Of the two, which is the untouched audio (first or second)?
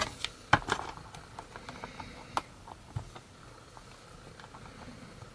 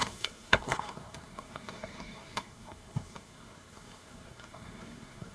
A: first